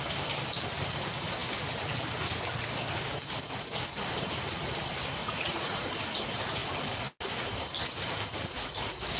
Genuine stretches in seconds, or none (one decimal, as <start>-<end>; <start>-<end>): 0.0-5.2; 5.9-9.2